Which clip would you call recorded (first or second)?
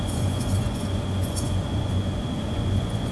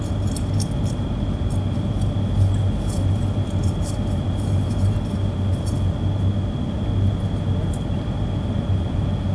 second